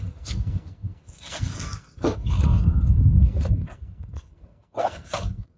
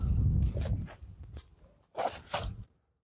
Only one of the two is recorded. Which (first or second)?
second